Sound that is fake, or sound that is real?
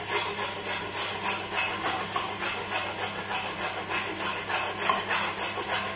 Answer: real